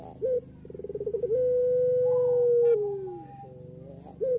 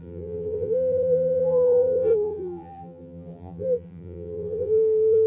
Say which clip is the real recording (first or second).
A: first